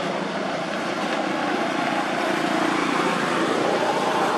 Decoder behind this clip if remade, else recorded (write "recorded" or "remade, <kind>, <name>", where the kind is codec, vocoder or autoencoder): remade, vocoder, BigVGAN v2